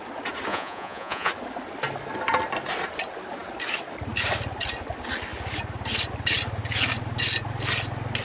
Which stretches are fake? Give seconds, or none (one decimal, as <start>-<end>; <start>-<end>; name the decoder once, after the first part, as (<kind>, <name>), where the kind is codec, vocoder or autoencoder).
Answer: 0.5-1.3 (vocoder, Vocos)